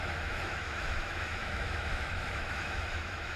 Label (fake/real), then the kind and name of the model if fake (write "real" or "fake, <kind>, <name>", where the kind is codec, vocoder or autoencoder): fake, autoencoder, DAC-VAE